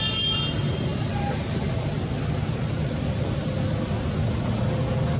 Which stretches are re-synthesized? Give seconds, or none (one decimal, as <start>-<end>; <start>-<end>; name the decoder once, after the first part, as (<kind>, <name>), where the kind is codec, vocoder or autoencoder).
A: none